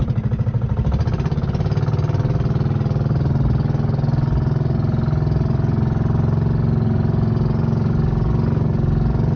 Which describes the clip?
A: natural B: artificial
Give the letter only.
A